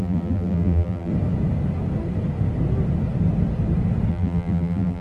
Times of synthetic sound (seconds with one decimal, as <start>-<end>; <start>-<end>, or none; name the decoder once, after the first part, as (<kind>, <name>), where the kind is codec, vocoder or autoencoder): 0.0-1.1 (vocoder, BigVGAN v2); 4.1-5.0